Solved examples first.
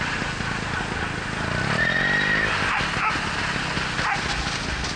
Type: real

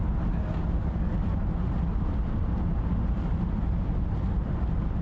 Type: real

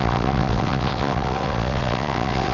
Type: fake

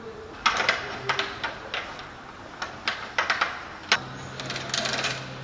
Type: real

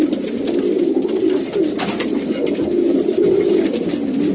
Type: real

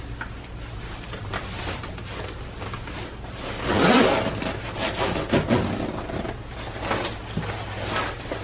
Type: real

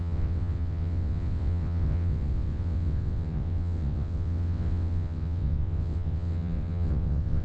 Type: fake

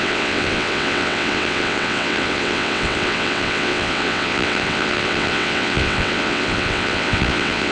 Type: fake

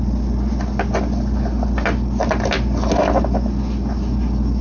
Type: real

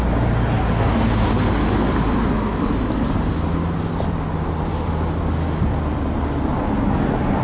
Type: real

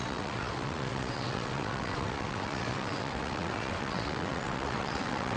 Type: fake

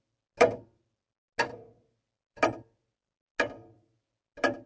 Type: real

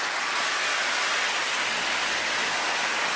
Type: real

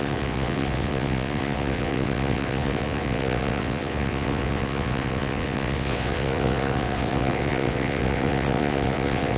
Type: fake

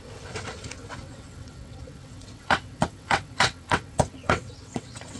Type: fake